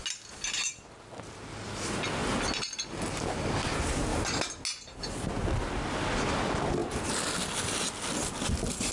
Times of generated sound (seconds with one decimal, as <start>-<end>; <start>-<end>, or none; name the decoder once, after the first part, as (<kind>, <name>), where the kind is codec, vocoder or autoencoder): none